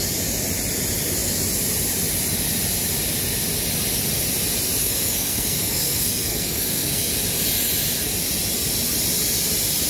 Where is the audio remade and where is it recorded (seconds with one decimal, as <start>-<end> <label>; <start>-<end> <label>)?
0.0-4.8 recorded; 4.8-7.1 remade; 7.1-9.9 recorded